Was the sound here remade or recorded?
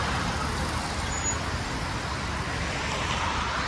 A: recorded